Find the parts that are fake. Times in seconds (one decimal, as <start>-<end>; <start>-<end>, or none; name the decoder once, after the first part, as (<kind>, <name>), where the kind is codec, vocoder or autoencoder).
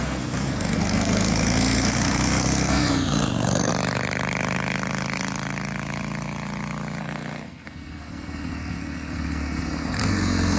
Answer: 0.0-3.7 (codec, SNAC); 7.0-10.6